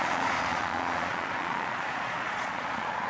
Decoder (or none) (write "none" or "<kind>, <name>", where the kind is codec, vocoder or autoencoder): vocoder, Vocos